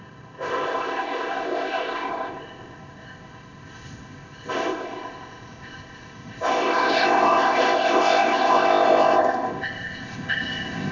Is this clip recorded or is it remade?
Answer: remade